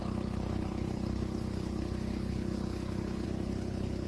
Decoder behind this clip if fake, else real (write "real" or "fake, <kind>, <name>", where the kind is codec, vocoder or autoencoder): fake, codec, HILCodec